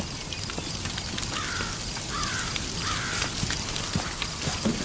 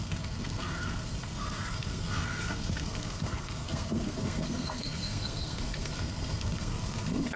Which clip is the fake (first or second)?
second